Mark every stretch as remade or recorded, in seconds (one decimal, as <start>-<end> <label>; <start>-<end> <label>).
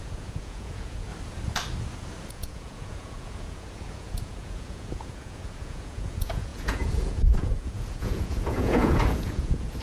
0.0-1.1 remade; 1.1-2.3 recorded; 2.3-9.8 remade